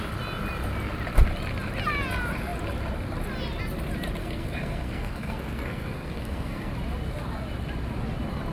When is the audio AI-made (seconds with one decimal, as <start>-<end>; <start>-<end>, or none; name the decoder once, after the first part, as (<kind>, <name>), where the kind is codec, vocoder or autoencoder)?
4.2-6.7 (codec, SNAC)